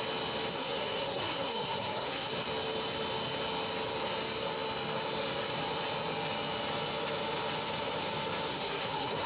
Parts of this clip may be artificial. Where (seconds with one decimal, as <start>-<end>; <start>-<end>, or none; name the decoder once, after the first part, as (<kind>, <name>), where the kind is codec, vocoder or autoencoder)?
0.5-2.3 (codec, SNAC); 8.5-9.3